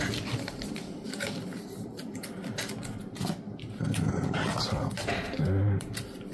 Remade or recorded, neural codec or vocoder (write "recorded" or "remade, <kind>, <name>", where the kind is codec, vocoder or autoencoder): remade, vocoder, BigVGAN v2